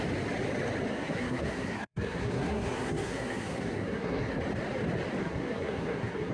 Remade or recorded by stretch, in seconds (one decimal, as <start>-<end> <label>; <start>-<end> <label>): 0.0-0.9 recorded; 0.9-4.4 remade; 4.4-5.2 recorded; 5.2-6.3 remade